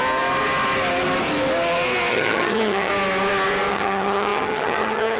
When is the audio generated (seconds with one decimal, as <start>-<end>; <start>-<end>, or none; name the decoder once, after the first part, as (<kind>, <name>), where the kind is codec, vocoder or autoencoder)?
2.1-2.9 (vocoder, HiFi-GAN); 3.7-5.2